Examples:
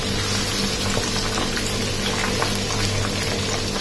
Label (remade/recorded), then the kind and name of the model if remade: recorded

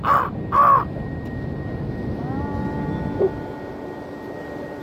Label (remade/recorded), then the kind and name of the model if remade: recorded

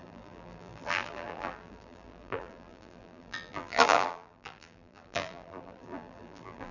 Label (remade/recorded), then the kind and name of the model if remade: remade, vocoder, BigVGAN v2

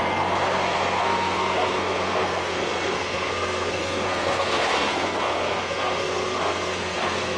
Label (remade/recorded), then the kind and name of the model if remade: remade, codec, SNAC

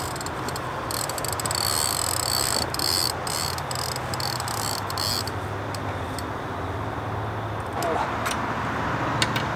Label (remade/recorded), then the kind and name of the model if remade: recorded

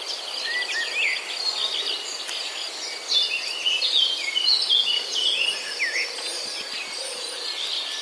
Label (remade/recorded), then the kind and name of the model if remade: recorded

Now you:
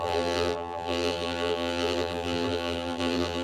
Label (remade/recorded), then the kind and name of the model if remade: remade, vocoder, BigVGAN v2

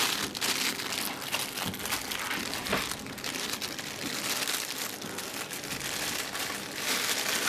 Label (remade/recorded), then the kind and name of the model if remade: recorded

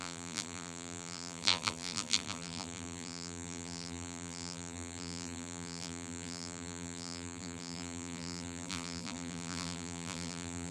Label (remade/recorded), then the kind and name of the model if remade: remade, vocoder, BigVGAN v2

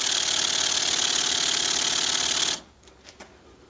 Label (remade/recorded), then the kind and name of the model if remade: recorded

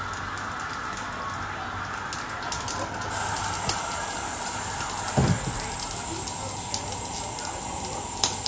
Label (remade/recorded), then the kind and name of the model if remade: recorded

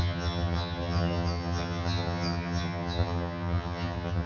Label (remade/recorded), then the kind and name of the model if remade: remade, vocoder, HiFi-GAN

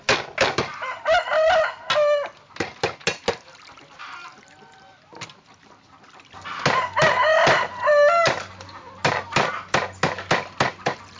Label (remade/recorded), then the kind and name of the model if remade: recorded